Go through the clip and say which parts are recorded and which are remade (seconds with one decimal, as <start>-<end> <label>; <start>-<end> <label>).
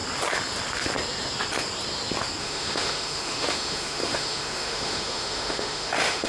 0.0-2.4 recorded; 2.4-6.3 remade